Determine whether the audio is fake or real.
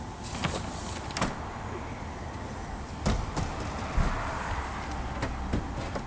real